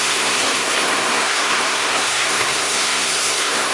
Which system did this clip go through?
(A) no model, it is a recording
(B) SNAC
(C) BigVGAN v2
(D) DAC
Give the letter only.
B